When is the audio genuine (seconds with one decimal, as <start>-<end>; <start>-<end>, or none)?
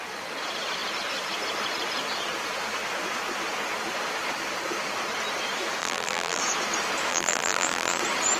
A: 0.0-5.8; 6.4-7.1; 8.0-8.4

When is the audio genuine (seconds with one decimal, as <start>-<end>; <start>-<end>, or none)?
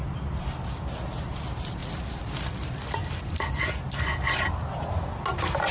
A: 0.0-1.8; 3.6-5.7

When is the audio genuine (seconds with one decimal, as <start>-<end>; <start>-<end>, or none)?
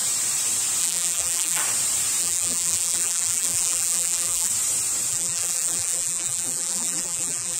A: 0.0-0.8; 1.6-2.2; 4.5-5.1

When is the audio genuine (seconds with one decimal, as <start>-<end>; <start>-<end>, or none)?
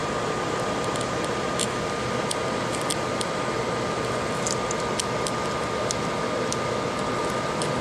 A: 3.9-7.2